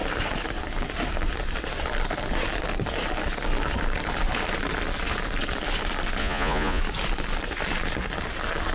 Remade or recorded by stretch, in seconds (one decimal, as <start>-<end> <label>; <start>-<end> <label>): 0.0-6.2 recorded; 6.2-6.8 remade; 6.8-8.7 recorded